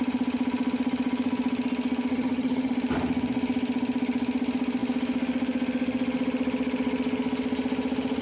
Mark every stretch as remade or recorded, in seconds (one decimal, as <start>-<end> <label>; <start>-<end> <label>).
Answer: 0.0-2.1 recorded; 2.1-2.7 remade; 2.7-8.2 recorded